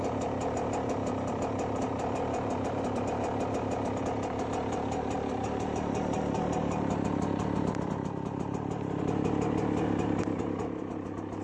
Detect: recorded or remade remade